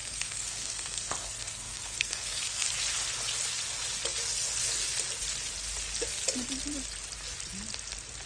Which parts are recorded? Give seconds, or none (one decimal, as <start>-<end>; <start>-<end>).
2.7-8.3